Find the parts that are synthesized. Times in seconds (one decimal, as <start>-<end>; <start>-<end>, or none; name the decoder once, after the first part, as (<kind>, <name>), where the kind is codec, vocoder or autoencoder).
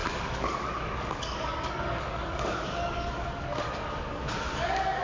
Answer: 0.0-5.0 (codec, DAC)